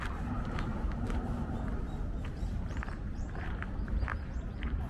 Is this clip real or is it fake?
fake